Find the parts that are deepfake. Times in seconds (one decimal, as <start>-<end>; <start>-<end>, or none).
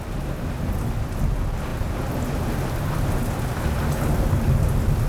none